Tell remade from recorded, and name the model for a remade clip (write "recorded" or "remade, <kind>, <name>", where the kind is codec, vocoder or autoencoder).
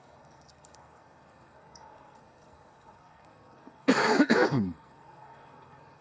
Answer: remade, codec, SNAC